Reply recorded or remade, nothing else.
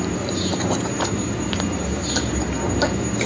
recorded